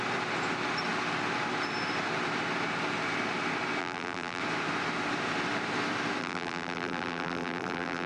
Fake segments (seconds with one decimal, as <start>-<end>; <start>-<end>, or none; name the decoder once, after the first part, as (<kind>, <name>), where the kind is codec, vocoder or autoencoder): 3.8-4.4 (vocoder, BigVGAN v2); 6.2-8.1